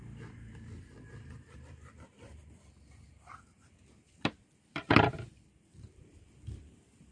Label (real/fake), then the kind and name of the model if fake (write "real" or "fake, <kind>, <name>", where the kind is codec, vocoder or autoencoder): fake, vocoder, BigVGAN v2